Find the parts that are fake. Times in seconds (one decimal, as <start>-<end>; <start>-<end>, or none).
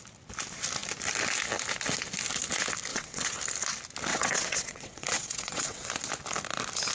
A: 2.9-3.4; 4.1-5.9